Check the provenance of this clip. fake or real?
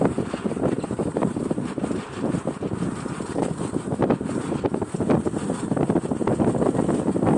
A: fake